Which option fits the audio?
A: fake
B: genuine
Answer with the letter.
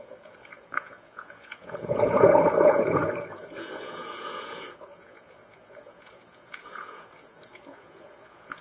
A